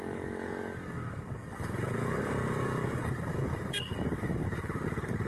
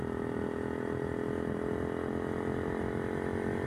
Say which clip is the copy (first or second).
first